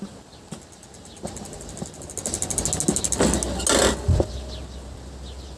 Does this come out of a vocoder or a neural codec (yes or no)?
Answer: no